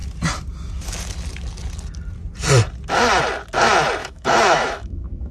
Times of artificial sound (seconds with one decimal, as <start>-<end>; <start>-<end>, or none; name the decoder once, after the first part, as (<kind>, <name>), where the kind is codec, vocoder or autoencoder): 4.0-5.3 (autoencoder, DAC-VAE)